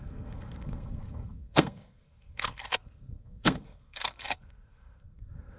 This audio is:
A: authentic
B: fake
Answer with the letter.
B